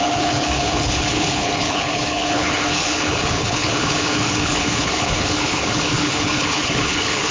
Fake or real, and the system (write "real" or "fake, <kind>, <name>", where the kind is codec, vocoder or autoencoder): fake, codec, HILCodec